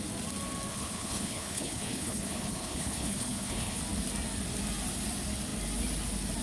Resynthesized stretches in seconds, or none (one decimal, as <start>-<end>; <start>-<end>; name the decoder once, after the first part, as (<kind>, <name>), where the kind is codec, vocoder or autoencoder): 0.7-3.8 (codec, HILCodec)